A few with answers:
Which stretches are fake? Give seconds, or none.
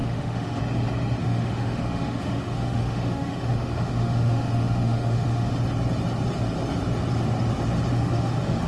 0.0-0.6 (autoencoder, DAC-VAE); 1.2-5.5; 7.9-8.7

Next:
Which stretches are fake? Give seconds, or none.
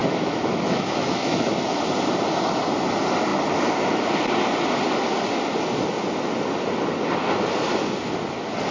0.0-1.5 (autoencoder, DAC-VAE)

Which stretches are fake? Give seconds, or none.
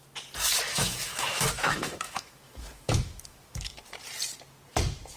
0.7-3.8 (autoencoder, DAC-VAE)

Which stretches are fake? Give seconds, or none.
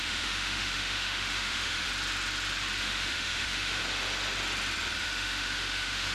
0.0-1.9 (autoencoder, DAC-VAE); 2.8-3.8; 5.0-6.1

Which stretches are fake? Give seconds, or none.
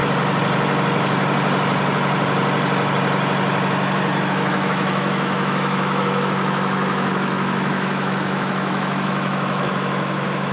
4.3-10.5 (autoencoder, DAC-VAE)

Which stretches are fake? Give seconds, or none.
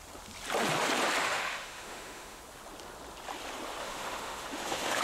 1.2-2.4 (autoencoder, DAC-VAE); 3.8-5.0